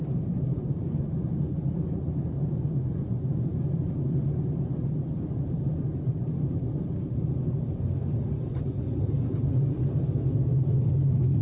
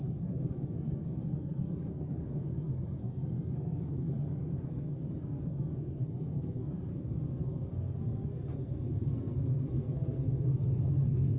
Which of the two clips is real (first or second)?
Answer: first